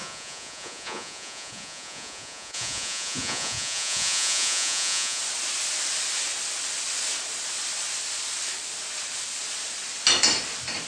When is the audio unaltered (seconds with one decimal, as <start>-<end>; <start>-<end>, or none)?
5.2-10.9